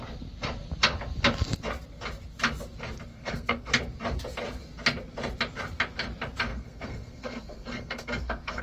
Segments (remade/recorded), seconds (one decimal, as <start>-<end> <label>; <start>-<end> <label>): 0.0-3.1 recorded; 3.1-3.7 remade; 3.7-6.5 recorded; 6.5-8.6 remade